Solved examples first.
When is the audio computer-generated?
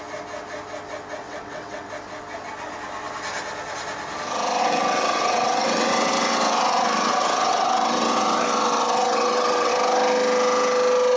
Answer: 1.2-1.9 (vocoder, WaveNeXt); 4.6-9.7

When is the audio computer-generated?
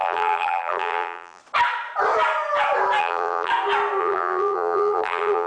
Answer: 0.0-1.4 (vocoder, BigVGAN v2); 3.0-3.5; 4.0-5.5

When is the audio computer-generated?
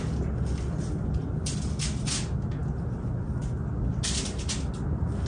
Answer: none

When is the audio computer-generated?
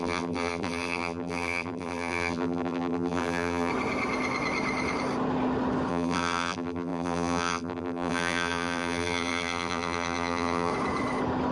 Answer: 0.0-3.7 (vocoder, BigVGAN v2); 5.9-10.7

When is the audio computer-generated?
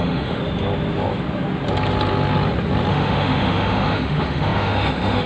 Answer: 0.0-0.4 (autoencoder, DAC-VAE); 2.9-5.3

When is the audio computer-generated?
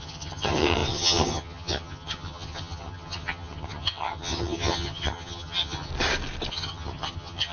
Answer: 0.0-5.9 (vocoder, HiFi-GAN); 6.5-7.5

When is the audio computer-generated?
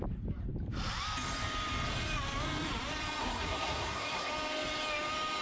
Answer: 3.2-4.3 (codec, SNAC)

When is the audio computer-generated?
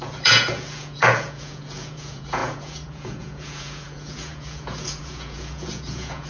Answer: 0.0-6.3 (vocoder, Vocos)